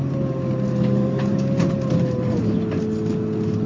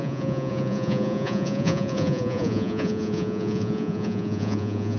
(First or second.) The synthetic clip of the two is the second